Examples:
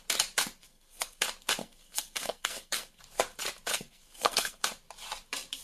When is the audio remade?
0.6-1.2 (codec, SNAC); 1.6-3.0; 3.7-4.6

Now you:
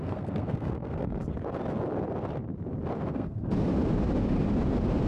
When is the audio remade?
0.0-1.3 (codec, SNAC); 3.1-3.5

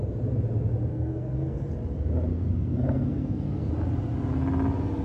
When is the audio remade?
0.9-1.7 (codec, SNAC); 2.3-3.7

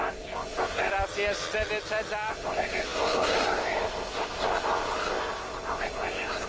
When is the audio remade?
0.0-0.9 (codec, SNAC); 2.3-6.5

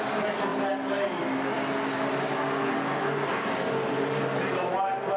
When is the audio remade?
none

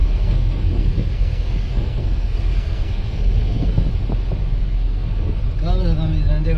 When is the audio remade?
0.0-3.9 (codec, SNAC); 4.5-5.4

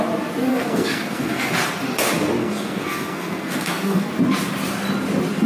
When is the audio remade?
0.5-1.5 (codec, SNAC); 2.4-4.1